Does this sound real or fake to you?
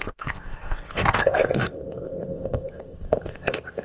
fake